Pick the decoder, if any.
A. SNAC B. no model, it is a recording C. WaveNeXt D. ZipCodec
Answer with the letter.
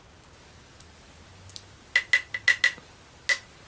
B